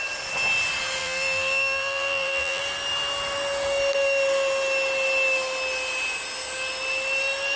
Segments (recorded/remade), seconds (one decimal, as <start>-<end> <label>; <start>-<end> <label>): 0.0-1.0 recorded; 1.0-2.6 remade; 2.6-7.6 recorded